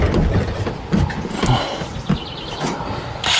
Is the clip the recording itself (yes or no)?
yes